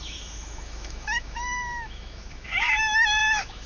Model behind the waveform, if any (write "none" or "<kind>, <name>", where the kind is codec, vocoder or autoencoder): autoencoder, DAC-VAE